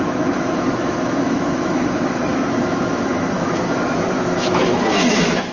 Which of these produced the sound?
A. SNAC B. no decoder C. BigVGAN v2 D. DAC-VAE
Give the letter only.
D